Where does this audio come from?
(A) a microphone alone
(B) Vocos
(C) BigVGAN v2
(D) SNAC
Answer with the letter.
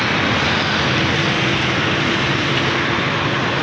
A